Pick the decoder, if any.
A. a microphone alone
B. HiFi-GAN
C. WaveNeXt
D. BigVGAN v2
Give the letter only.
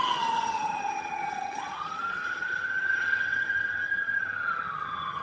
B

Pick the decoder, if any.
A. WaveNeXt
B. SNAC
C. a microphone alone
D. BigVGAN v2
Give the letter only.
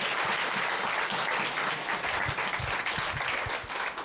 C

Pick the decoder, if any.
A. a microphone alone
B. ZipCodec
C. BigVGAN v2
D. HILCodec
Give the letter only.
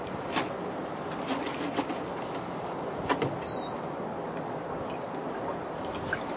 A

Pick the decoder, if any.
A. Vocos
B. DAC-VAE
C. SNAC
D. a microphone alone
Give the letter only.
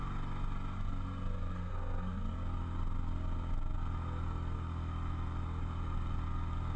D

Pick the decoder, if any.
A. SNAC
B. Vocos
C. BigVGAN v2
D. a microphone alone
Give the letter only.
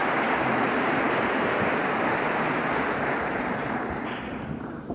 C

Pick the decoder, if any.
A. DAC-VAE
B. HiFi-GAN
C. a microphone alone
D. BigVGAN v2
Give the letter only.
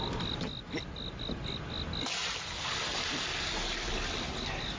C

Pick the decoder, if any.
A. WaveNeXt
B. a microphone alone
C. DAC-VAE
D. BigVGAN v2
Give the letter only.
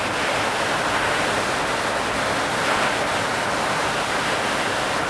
B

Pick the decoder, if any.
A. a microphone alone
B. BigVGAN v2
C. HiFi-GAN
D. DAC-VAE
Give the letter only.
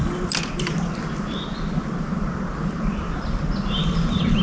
A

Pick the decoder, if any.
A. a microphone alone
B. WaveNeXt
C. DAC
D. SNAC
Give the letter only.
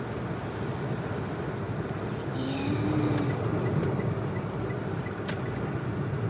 A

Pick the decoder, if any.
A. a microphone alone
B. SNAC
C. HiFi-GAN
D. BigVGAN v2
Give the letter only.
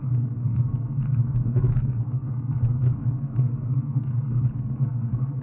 B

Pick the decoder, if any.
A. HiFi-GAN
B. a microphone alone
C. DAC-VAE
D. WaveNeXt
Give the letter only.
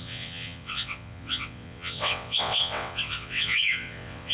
D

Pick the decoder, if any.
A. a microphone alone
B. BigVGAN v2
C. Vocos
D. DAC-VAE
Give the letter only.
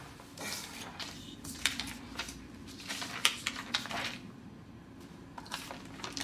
B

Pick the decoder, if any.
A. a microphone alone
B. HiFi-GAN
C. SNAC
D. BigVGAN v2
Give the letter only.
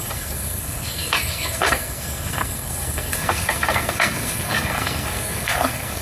C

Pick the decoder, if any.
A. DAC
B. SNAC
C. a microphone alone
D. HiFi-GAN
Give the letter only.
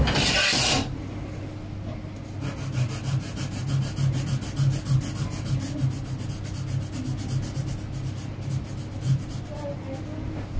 C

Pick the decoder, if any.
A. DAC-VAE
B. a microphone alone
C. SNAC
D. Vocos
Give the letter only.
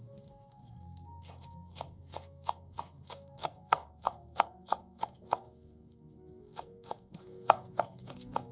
C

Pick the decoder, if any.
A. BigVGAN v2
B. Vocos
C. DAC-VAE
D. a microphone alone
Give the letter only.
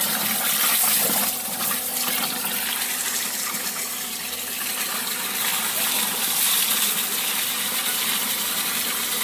D